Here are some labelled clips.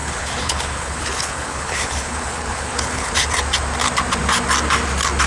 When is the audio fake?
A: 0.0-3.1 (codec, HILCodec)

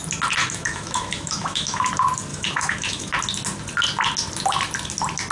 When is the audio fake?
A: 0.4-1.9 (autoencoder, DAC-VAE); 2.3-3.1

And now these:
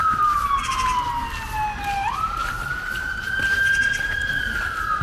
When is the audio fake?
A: 0.0-0.6 (vocoder, BigVGAN v2); 2.4-3.3

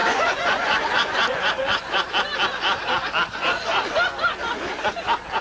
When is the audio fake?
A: 0.0-2.1 (vocoder, Vocos); 3.3-3.9